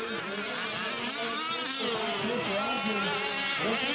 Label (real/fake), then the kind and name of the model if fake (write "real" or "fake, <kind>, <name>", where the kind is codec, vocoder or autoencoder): real